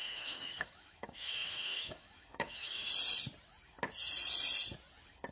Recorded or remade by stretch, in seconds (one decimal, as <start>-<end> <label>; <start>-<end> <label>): 0.0-2.9 remade; 2.9-5.3 recorded